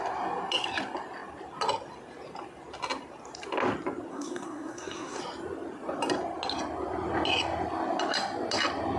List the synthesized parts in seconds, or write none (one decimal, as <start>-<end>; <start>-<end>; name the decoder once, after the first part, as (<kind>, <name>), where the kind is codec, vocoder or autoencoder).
4.1-5.2 (codec, SNAC)